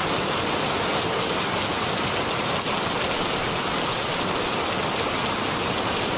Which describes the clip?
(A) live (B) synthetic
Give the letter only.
A